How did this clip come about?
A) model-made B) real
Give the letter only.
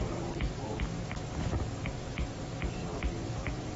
B